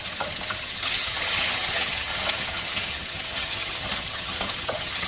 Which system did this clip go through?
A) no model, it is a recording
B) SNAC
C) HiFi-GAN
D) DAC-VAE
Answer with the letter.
C